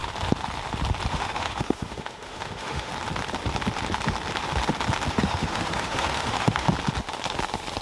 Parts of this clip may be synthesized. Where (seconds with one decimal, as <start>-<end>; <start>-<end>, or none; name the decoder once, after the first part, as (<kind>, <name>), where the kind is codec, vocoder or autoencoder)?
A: 1.1-2.9 (autoencoder, DAC-VAE); 5.1-6.7